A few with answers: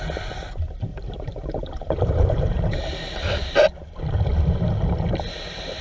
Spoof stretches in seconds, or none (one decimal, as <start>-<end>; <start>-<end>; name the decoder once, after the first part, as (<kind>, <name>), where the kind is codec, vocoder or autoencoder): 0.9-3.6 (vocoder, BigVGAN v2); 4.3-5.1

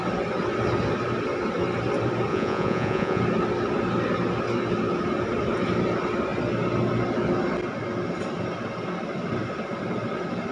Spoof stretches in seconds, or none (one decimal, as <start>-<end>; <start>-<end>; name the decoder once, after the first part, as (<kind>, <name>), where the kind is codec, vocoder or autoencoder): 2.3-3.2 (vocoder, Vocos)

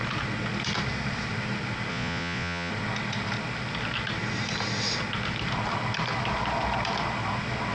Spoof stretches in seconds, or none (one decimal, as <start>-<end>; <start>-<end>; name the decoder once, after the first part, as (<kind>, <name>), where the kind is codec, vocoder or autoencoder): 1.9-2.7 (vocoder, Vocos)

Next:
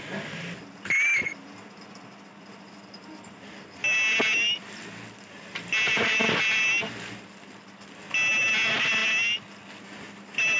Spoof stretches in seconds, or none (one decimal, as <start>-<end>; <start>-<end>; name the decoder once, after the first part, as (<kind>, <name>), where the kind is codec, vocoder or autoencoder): 5.9-6.7 (vocoder, BigVGAN v2)

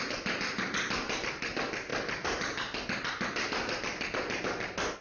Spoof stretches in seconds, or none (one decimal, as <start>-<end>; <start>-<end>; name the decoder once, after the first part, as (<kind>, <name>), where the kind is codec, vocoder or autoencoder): none